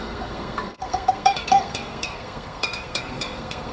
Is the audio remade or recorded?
remade